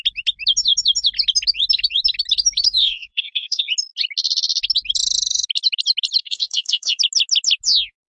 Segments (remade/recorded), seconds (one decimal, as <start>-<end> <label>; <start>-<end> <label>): 0.0-2.8 recorded; 2.8-3.6 remade; 3.6-6.2 recorded; 6.2-7.0 remade; 7.0-8.1 recorded